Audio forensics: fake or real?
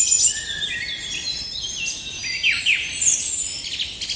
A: real